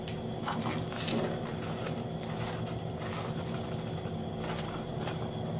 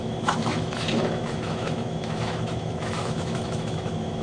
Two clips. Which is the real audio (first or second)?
first